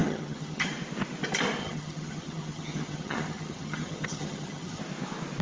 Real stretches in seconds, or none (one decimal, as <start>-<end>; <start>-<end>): 0.7-1.6; 4.8-5.4